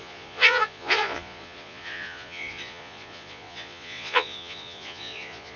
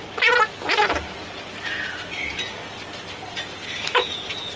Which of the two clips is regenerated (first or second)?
first